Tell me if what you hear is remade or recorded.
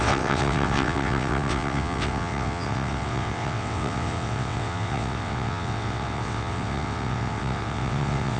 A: remade